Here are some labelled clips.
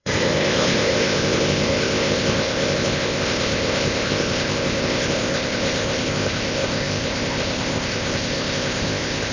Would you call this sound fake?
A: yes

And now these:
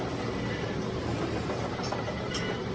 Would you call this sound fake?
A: no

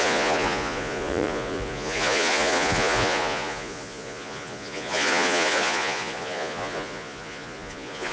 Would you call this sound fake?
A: yes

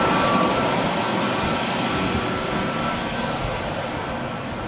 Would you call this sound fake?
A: no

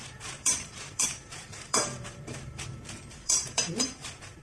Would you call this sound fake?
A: yes